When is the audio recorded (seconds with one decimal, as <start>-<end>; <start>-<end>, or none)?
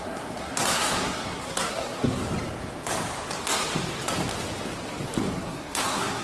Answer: 2.2-5.3